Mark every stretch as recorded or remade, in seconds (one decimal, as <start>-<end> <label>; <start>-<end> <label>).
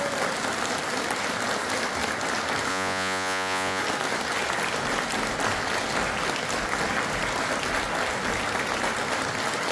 0.0-2.7 recorded; 2.7-3.8 remade; 3.8-9.7 recorded